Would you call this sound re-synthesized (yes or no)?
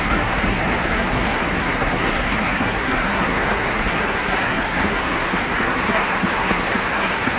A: yes